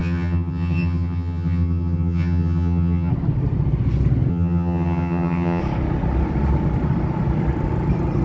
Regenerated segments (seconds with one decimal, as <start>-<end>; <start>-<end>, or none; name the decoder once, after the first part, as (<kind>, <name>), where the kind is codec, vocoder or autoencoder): 0.0-3.1 (vocoder, HiFi-GAN); 4.3-5.6